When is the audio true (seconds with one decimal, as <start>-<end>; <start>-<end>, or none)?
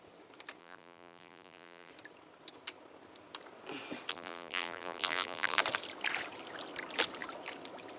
0.0-0.6; 1.9-4.1; 5.6-8.0